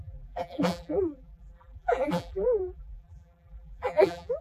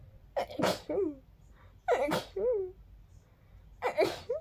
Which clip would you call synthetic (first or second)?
first